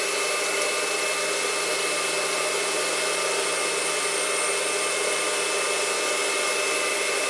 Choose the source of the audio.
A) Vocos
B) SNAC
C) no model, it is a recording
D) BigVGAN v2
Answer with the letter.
C